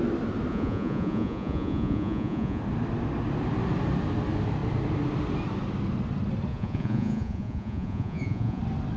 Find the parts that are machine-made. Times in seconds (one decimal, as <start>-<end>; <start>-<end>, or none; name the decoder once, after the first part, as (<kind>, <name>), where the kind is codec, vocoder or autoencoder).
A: 0.5-2.6 (vocoder, Vocos); 6.5-8.6